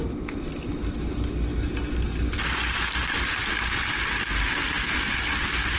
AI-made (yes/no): no